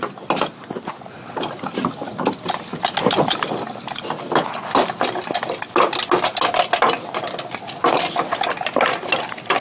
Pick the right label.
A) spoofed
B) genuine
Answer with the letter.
B